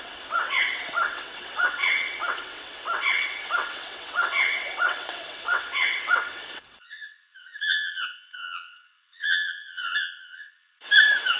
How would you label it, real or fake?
fake